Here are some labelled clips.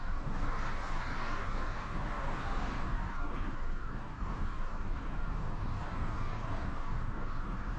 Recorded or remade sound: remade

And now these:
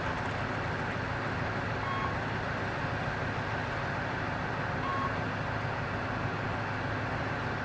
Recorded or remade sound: recorded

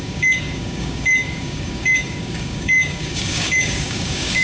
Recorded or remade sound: remade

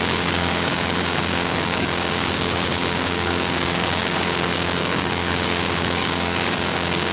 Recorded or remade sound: remade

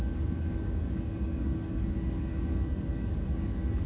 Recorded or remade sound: remade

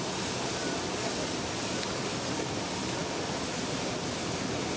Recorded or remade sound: recorded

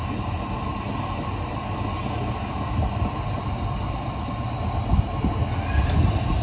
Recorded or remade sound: recorded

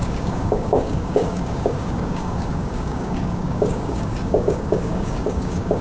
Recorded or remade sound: remade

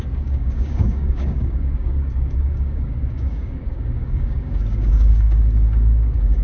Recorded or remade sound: remade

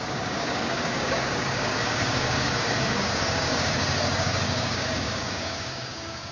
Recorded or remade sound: remade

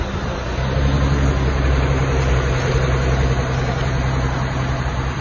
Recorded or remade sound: recorded